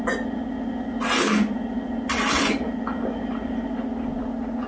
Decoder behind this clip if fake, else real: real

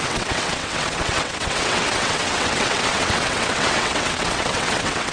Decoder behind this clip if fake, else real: fake, vocoder, WaveNeXt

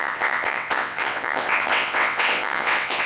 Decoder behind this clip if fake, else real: fake, vocoder, WaveNeXt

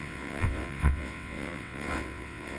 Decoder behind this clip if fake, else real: fake, vocoder, WaveNeXt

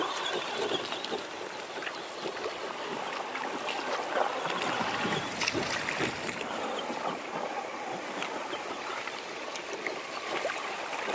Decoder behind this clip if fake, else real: real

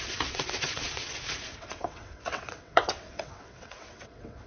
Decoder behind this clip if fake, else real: fake, vocoder, WaveNeXt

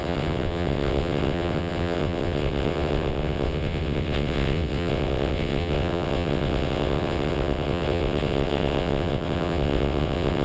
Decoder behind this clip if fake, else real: fake, vocoder, WaveNeXt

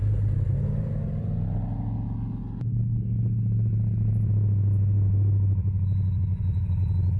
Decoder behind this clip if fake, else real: real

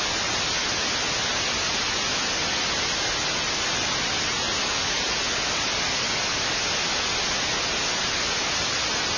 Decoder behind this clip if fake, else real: real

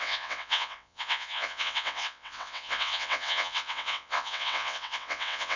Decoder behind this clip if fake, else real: fake, vocoder, WaveNeXt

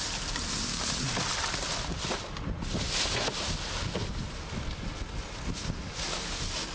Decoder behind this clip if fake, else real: real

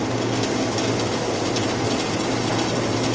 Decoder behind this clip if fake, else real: real